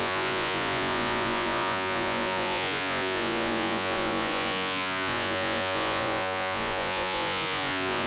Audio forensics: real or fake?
fake